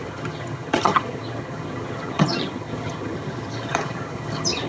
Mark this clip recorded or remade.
remade